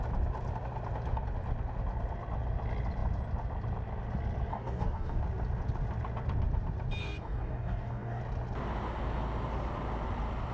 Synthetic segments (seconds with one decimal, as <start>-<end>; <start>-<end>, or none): 4.5-5.2; 7.0-8.2